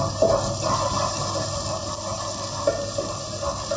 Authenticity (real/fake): real